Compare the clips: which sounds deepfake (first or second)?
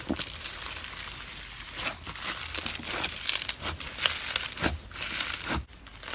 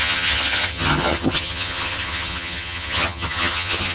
second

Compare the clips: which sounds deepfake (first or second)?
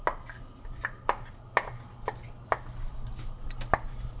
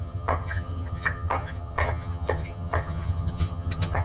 second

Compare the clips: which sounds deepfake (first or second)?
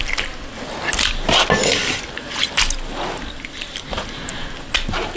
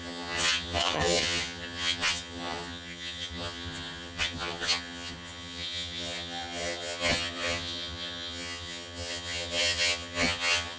second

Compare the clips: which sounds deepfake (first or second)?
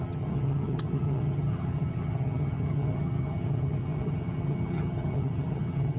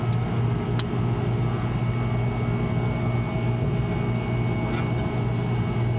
first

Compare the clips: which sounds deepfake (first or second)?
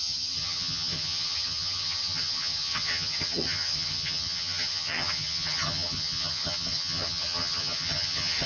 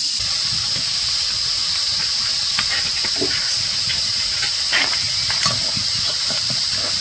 first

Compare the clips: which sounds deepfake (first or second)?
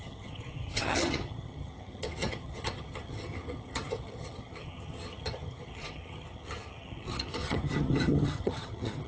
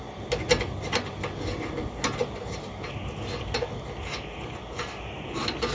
first